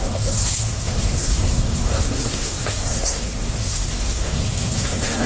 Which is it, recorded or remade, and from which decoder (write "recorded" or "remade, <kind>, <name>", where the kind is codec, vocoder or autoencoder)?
remade, codec, SNAC